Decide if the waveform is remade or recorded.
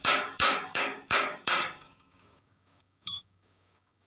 remade